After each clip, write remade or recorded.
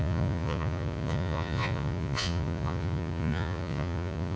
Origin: remade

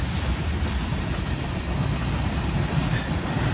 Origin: recorded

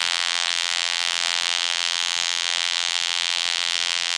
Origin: remade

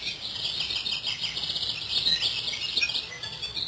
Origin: recorded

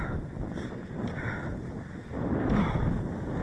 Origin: recorded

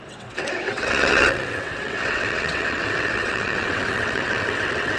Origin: remade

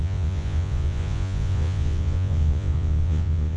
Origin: remade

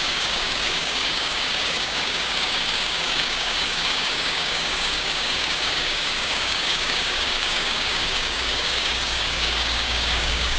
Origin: remade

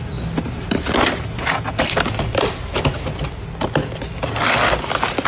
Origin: recorded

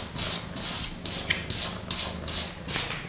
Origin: recorded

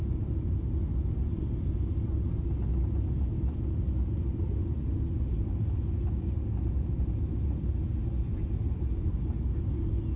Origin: recorded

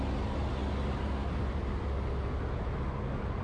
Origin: recorded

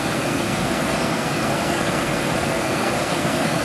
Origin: remade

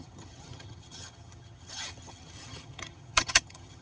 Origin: remade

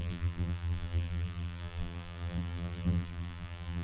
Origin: remade